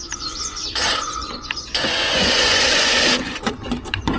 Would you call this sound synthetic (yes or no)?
yes